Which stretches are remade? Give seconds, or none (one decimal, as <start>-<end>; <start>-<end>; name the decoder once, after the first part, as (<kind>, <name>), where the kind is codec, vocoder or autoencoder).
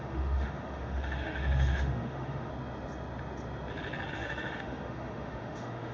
0.0-2.5 (autoencoder, DAC-VAE); 4.1-5.9